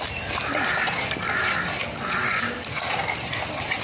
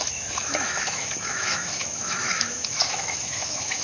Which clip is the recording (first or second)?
first